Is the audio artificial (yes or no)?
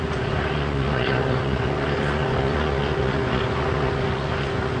yes